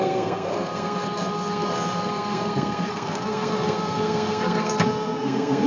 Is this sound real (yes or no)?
no